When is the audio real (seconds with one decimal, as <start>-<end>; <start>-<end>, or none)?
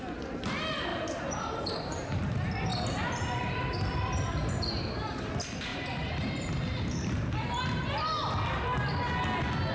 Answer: 0.0-0.9; 2.2-2.7; 5.3-5.7; 8.1-9.7